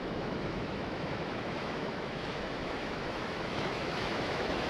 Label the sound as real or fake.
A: fake